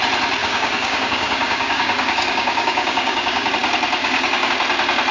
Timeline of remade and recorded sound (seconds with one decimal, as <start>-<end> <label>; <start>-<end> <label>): 0.0-0.4 recorded; 0.4-3.5 remade; 3.5-4.0 recorded; 4.0-4.5 remade; 4.5-5.1 recorded